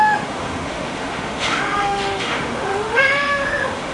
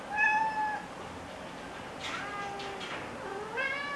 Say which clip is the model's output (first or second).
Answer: first